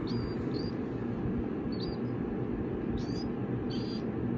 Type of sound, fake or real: real